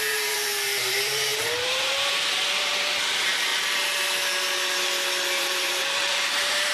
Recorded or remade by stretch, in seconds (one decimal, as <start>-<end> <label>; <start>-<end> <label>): 0.0-3.5 remade; 3.5-5.4 recorded; 5.4-6.7 remade